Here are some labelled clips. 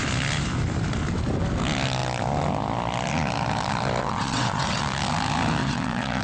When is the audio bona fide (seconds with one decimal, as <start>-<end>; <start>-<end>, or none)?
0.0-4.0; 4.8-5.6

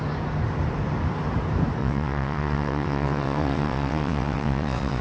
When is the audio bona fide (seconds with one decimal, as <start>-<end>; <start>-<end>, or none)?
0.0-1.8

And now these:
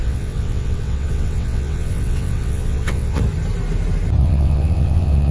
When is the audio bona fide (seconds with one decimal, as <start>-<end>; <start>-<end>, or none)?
3.2-4.2